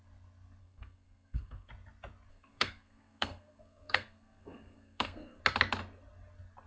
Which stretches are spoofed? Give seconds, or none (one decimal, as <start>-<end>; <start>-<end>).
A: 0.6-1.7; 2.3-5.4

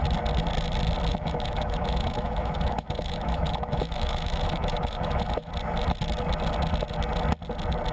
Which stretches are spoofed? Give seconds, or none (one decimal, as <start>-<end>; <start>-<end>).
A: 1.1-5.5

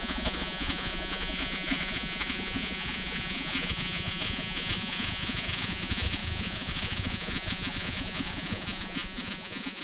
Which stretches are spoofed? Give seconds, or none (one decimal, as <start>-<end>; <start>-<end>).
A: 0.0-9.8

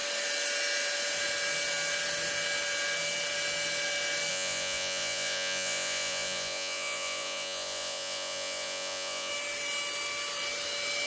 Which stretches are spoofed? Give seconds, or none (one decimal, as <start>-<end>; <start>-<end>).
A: 4.3-9.3

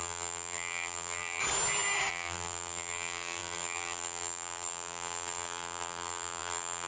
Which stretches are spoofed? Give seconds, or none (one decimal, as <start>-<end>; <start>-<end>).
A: 0.0-1.4; 2.1-6.9

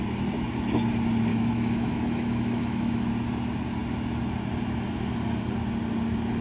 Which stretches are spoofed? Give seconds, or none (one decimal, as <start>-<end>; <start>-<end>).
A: 1.3-3.1

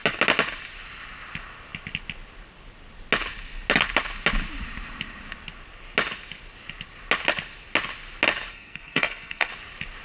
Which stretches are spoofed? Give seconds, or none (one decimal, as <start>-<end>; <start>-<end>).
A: 8.5-9.5